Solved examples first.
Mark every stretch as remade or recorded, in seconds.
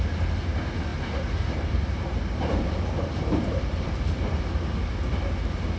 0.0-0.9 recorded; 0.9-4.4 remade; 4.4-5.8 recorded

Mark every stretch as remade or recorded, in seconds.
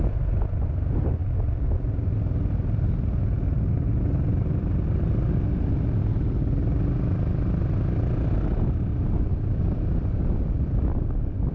0.0-11.5 recorded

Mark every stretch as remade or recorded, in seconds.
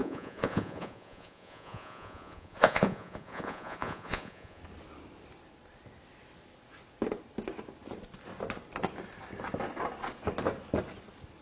0.0-4.6 remade; 4.6-11.4 recorded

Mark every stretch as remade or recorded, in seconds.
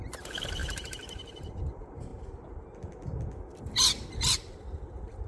0.0-2.1 remade; 2.1-3.7 recorded; 3.7-5.3 remade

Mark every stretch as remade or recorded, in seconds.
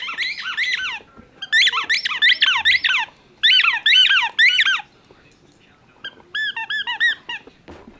0.0-8.0 recorded